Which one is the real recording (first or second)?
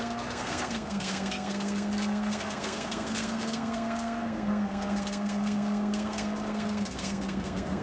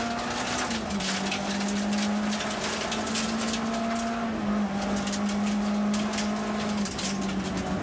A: second